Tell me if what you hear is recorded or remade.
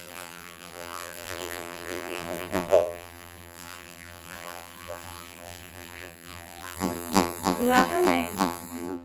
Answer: remade